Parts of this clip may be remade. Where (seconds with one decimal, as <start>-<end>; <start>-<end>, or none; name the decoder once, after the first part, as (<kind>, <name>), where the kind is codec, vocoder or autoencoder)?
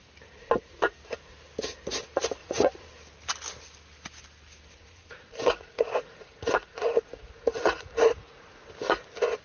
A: 2.4-2.9 (vocoder, Vocos); 4.8-8.7